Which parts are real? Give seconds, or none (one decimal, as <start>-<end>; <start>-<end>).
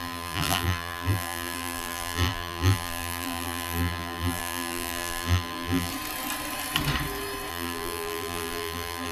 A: 5.9-7.5